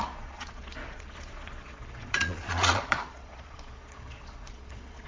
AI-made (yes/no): yes